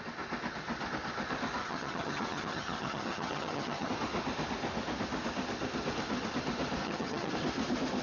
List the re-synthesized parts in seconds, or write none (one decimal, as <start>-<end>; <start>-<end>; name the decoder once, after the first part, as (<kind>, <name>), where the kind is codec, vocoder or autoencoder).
1.6-3.9 (vocoder, HiFi-GAN); 6.8-7.3